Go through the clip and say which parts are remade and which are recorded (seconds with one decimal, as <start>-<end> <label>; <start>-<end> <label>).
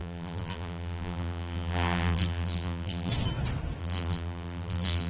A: 0.0-3.1 remade; 3.1-3.8 recorded; 3.8-5.1 remade